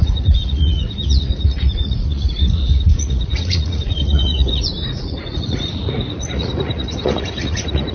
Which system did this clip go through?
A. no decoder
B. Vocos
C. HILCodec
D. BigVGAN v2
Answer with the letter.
B